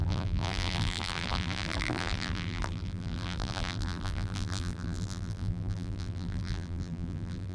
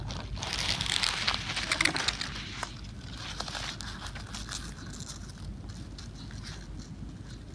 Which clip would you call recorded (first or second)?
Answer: second